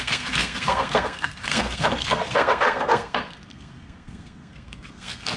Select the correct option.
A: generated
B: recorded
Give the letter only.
A